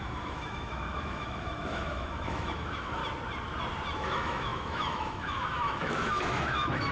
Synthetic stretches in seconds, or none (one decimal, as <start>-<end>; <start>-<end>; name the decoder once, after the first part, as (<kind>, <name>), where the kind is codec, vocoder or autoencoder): 0.0-3.0 (autoencoder, DAC-VAE); 4.0-6.9